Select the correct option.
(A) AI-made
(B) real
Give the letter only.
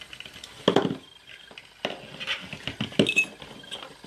B